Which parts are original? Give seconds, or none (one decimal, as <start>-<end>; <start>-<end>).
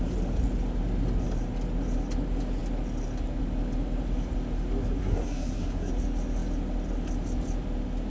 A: 0.0-5.0; 5.9-8.1